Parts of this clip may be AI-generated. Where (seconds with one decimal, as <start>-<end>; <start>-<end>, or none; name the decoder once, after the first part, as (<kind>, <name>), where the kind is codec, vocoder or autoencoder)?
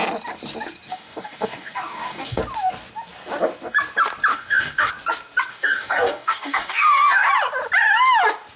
0.9-2.4 (codec, DAC); 4.3-4.9; 5.5-7.3